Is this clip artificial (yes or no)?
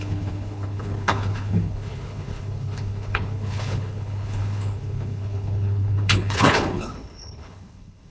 yes